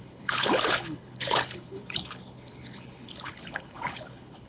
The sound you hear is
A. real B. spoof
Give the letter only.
B